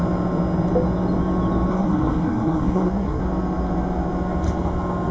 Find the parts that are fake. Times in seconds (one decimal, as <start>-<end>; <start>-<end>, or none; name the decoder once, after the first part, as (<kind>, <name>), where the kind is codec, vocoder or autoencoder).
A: 1.7-3.2 (codec, SNAC)

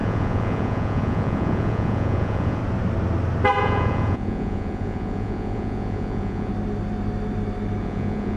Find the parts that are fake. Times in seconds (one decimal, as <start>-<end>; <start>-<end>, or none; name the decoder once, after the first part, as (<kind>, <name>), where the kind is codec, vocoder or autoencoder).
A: 0.0-2.6 (vocoder, Vocos); 3.6-6.5; 7.8-8.4

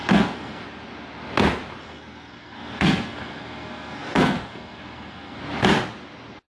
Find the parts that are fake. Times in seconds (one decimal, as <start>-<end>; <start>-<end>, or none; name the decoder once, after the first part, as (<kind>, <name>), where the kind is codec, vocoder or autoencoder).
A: 0.0-0.6 (codec, SNAC); 1.8-5.4

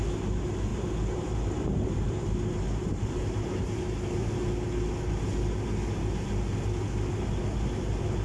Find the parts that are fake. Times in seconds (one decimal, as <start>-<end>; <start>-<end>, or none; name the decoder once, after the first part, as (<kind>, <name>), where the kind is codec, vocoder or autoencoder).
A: 0.7-4.3 (vocoder, BigVGAN v2)

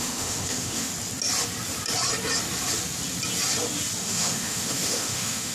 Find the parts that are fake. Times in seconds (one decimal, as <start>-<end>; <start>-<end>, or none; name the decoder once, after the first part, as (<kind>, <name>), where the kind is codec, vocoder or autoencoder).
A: 0.0-0.9 (autoencoder, DAC-VAE); 4.0-5.5